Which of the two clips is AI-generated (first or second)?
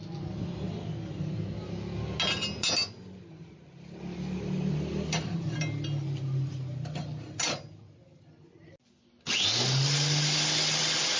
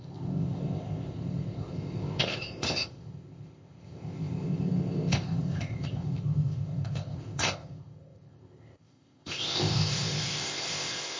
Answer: second